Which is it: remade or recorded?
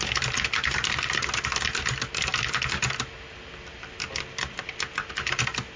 recorded